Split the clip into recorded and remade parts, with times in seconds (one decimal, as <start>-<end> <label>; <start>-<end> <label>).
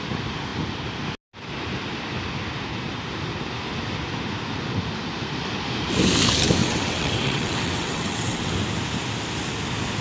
0.0-6.6 recorded; 6.6-8.5 remade; 8.5-10.0 recorded